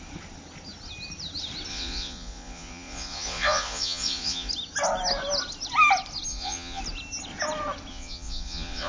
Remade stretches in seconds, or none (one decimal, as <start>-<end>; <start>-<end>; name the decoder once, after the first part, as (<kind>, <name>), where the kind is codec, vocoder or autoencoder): 1.7-4.5 (vocoder, Vocos); 6.3-6.8; 7.9-8.9